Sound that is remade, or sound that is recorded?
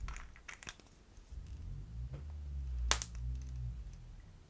recorded